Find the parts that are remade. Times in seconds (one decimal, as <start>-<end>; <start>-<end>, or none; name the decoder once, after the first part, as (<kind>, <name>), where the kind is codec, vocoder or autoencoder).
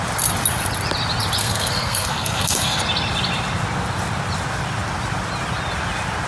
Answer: 1.4-2.8 (codec, SNAC)